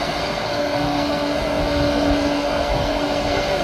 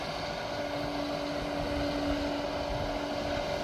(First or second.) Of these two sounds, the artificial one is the first